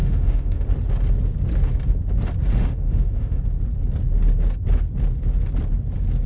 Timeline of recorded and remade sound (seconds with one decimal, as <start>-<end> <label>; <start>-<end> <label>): 0.0-0.6 remade; 0.6-2.5 recorded; 2.5-3.4 remade; 3.4-6.3 recorded